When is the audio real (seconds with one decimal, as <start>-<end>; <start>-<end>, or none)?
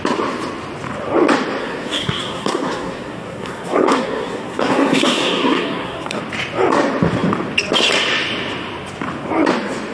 0.0-1.6; 6.2-9.9